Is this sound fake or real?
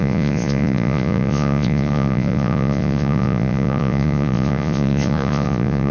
fake